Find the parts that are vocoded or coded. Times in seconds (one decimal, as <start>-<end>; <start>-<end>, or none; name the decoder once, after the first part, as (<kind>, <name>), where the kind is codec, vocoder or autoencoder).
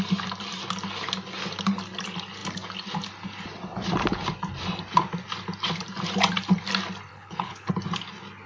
7.1-7.7 (codec, HILCodec)